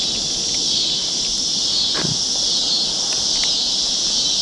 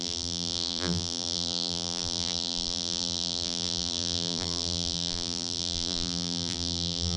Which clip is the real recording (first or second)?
first